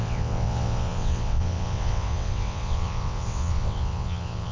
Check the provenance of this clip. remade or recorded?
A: remade